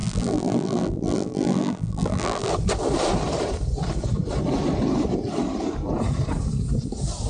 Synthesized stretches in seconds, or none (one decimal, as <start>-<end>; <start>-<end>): 0.0-2.5